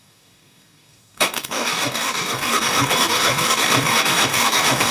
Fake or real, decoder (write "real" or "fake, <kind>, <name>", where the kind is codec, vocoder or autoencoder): fake, codec, DAC